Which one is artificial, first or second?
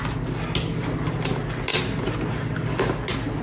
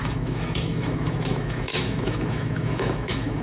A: second